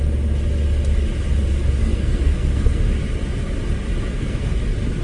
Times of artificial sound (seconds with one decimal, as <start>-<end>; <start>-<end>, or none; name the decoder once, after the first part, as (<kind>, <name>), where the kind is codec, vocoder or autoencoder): 1.8-2.8 (codec, SNAC); 4.1-4.6